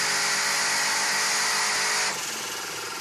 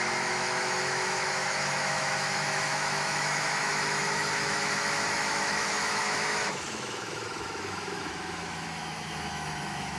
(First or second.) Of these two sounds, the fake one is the second